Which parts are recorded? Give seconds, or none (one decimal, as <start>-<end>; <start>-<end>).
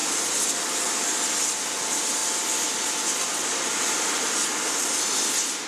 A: 0.0-2.2; 4.6-5.7